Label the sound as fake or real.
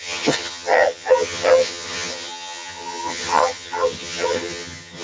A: fake